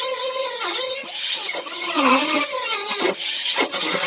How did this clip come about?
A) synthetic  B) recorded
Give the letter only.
A